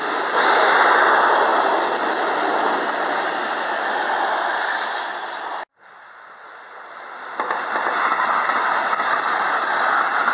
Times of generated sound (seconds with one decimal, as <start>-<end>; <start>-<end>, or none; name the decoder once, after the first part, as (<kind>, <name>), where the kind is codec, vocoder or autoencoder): none